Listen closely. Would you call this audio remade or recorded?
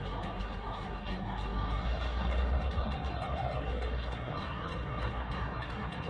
remade